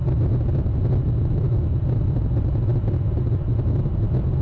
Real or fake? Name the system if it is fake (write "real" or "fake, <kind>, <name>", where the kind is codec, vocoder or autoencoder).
real